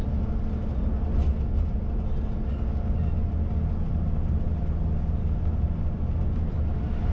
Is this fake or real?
real